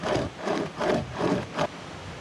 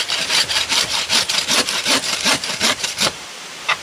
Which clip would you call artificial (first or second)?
second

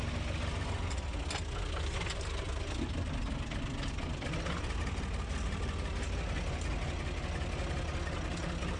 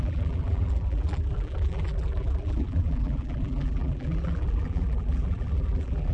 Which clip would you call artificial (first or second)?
second